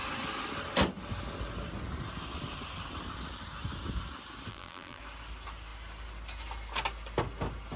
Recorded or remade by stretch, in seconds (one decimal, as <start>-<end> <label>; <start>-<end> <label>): 0.0-4.5 recorded; 4.5-5.0 remade; 5.0-7.8 recorded